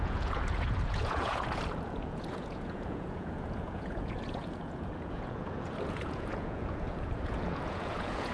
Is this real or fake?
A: fake